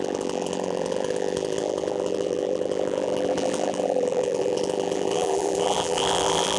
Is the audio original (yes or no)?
no